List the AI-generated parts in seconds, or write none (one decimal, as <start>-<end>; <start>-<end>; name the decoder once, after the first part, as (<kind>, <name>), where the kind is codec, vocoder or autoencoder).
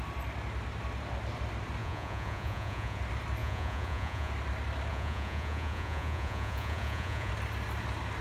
1.8-3.0 (vocoder, Vocos); 3.4-4.3; 4.9-7.3